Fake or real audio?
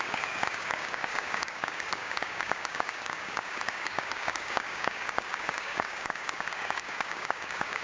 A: fake